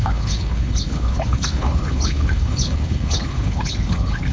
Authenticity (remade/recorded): remade